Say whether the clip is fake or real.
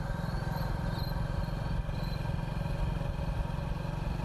real